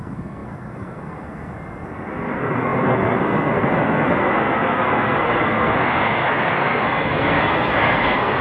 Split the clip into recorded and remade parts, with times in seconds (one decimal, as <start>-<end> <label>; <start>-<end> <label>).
0.0-8.4 remade